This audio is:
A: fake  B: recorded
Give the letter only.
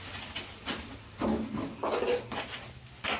B